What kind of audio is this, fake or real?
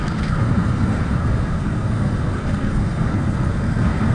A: fake